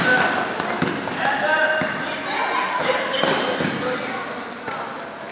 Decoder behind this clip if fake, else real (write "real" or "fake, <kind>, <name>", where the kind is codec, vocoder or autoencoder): real